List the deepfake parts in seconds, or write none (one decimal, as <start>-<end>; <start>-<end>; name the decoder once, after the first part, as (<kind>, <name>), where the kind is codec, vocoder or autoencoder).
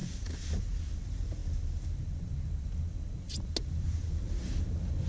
none